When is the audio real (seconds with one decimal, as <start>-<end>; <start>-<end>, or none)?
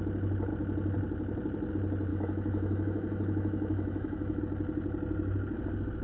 0.0-2.1; 4.4-6.0